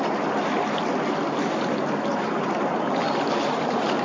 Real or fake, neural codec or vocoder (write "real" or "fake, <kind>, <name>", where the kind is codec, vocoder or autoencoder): real